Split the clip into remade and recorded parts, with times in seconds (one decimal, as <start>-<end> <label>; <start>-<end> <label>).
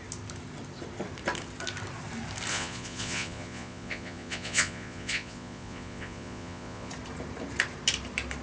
0.0-2.5 recorded; 2.5-6.9 remade; 6.9-8.4 recorded